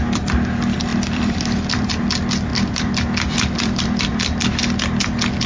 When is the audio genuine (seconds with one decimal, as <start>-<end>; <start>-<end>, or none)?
0.0-0.9; 1.9-2.5; 4.5-5.5